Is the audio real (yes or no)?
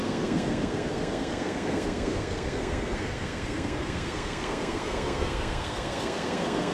no